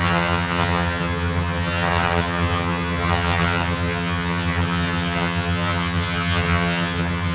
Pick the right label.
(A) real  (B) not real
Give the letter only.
B